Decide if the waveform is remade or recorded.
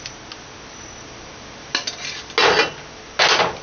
recorded